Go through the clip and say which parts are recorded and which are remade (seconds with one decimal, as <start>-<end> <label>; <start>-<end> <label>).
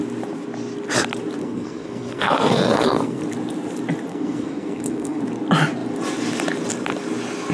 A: 0.0-1.4 recorded; 1.4-3.2 remade; 3.2-4.1 recorded; 4.1-5.2 remade; 5.2-7.5 recorded